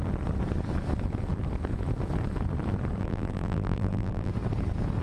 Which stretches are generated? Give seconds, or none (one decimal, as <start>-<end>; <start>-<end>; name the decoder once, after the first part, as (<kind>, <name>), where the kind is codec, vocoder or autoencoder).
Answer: 3.0-4.3 (vocoder, BigVGAN v2)